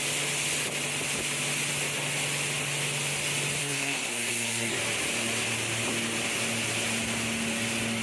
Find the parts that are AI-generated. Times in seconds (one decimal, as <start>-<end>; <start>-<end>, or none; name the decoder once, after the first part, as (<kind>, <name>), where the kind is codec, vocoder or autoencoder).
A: 3.6-4.8 (codec, SNAC)